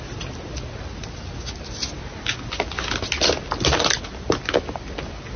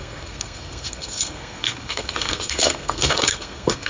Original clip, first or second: first